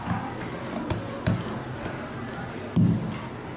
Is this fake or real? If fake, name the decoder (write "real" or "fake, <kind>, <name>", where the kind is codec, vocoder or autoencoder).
real